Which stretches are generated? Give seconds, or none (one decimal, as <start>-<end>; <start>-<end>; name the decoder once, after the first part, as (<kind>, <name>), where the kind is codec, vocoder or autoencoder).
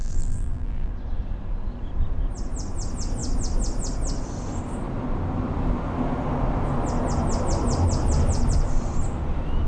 0.0-0.9 (vocoder, BigVGAN v2)